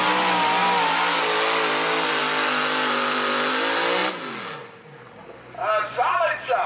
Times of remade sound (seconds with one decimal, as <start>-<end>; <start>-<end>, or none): none